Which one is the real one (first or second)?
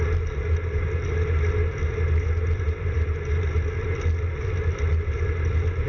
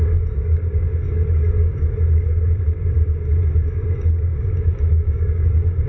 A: first